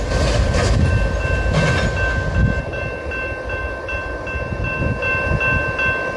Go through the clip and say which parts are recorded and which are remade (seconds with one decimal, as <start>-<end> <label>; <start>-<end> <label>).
0.0-3.6 recorded; 3.6-4.5 remade; 4.5-6.2 recorded